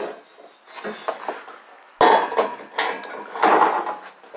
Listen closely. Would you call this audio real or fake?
real